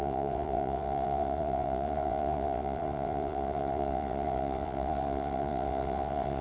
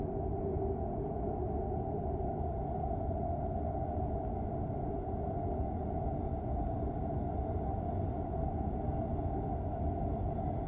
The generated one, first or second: first